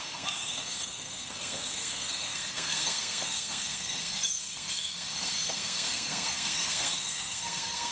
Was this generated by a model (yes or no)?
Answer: yes